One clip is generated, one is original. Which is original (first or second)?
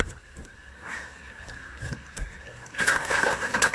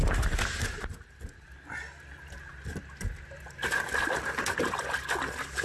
second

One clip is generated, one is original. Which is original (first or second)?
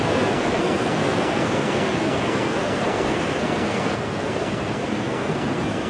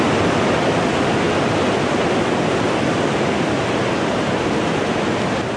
second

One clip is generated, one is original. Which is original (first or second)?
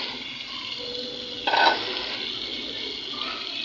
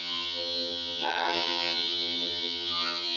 first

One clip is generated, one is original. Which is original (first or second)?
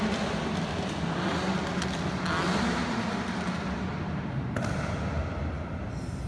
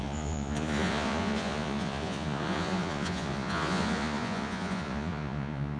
first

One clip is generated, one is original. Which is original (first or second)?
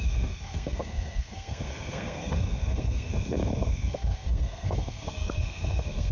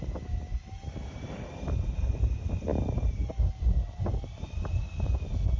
second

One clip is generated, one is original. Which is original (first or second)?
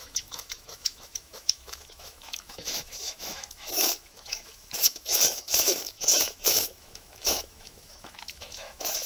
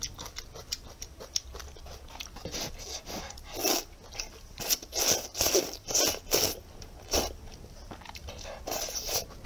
second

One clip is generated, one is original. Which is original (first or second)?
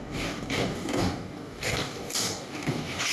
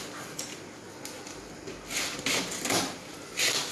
second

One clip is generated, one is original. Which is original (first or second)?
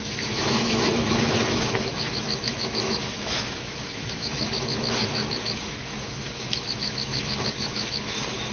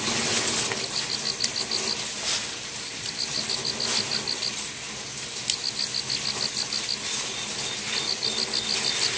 second